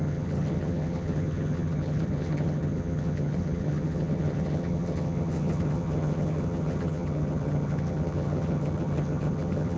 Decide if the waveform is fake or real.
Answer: fake